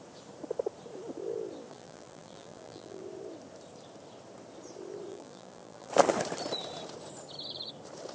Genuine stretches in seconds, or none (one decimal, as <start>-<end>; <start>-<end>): 0.0-1.7; 3.0-5.1; 5.9-8.1